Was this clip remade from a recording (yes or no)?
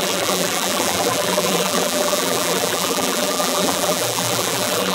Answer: yes